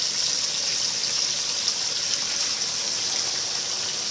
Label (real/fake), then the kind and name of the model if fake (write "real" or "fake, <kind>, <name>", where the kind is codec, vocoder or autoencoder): real